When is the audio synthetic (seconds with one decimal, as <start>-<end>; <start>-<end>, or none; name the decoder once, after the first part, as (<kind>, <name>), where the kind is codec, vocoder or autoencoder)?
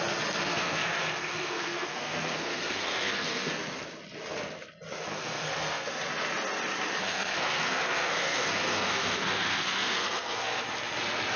0.5-3.5 (codec, SNAC); 5.1-5.9; 7.0-10.6